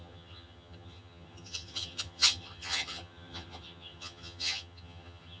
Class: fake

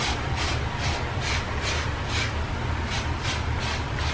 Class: real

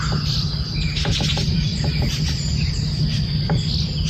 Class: real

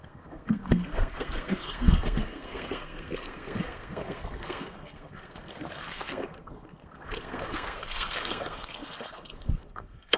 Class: fake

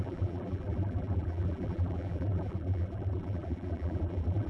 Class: fake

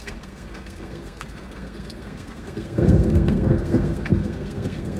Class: fake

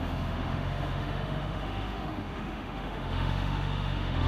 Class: fake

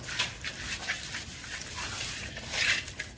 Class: real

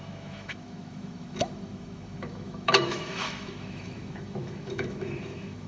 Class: fake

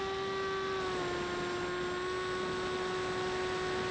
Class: real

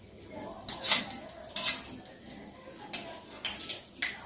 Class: real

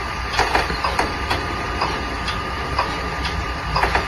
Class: fake